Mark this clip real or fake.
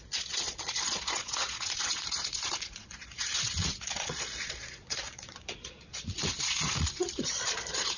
fake